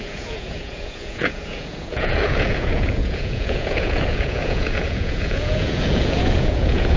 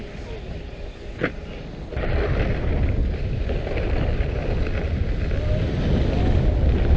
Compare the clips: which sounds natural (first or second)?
second